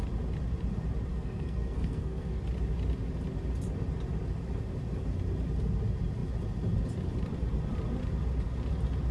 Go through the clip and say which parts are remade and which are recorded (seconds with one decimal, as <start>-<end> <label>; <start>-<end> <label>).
0.0-1.1 recorded; 1.1-2.4 remade; 2.4-9.1 recorded